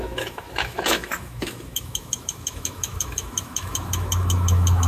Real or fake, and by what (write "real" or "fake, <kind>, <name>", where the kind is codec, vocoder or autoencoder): fake, autoencoder, DAC-VAE